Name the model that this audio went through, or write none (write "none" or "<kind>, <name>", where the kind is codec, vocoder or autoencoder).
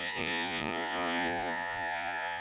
vocoder, Vocos